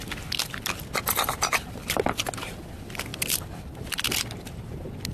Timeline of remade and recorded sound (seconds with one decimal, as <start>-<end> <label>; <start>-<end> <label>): 0.0-5.1 recorded